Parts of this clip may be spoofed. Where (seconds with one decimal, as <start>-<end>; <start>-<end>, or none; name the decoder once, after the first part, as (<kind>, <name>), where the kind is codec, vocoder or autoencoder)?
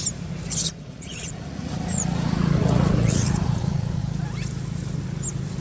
0.6-4.0 (vocoder, Vocos)